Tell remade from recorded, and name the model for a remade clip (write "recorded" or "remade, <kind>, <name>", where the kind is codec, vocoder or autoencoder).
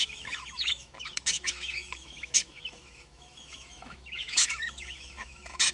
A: remade, autoencoder, DAC-VAE